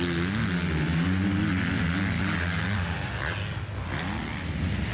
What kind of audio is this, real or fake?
real